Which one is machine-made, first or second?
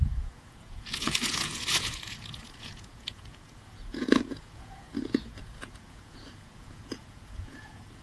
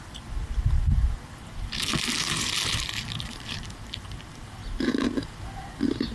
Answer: first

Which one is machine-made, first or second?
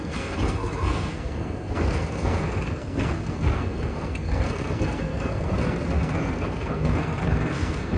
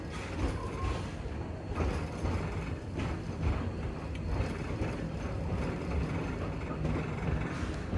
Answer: first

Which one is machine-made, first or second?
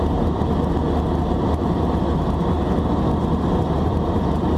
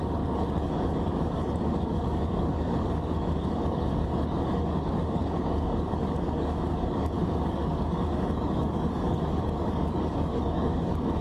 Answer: second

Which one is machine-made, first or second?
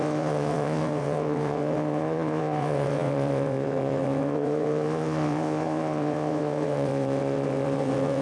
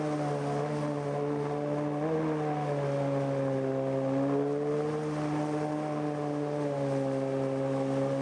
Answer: first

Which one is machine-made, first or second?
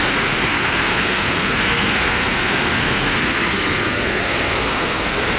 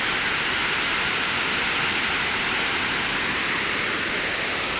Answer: first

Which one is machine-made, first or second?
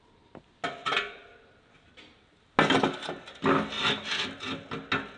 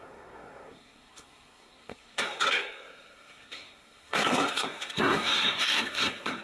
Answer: second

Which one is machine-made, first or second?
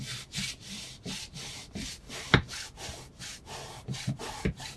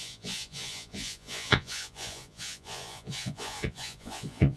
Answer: second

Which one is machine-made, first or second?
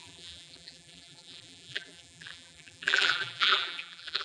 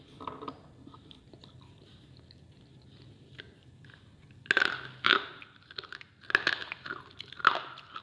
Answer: first